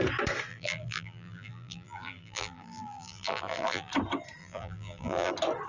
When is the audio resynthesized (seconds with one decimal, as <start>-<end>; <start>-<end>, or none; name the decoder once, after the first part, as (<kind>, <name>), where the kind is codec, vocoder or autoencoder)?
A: 0.5-3.9 (vocoder, BigVGAN v2); 4.4-5.3